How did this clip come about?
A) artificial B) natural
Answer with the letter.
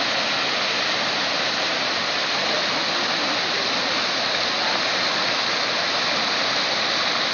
B